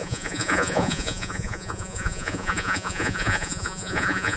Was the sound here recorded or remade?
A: remade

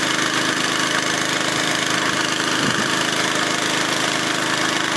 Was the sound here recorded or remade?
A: recorded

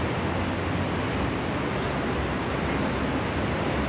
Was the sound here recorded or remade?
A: recorded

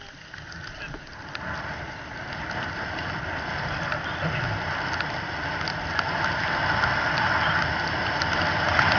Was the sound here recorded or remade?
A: recorded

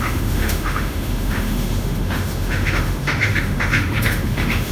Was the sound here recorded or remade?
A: remade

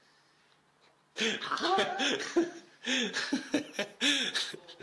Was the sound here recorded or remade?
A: remade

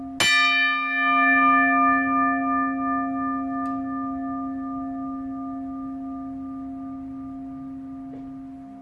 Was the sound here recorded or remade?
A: recorded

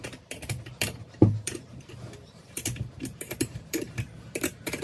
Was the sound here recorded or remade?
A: remade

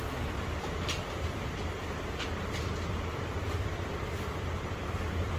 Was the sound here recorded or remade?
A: recorded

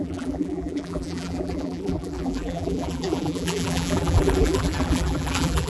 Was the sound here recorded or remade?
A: remade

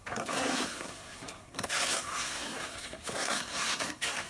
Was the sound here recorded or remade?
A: remade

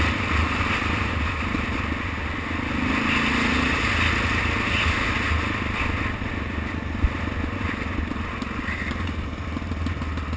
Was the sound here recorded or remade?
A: recorded